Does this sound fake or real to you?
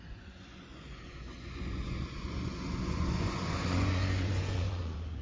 fake